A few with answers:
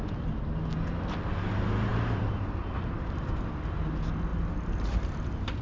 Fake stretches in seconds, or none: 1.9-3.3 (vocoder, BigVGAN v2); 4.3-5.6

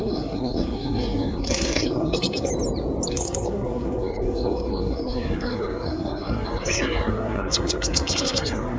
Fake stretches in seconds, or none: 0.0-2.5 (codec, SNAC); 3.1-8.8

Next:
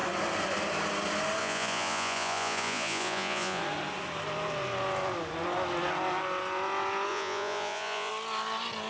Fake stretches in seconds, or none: 1.4-3.6 (vocoder, Vocos); 7.1-8.1

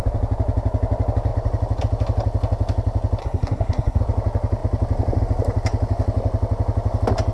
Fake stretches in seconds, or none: 3.2-4.0 (codec, SNAC)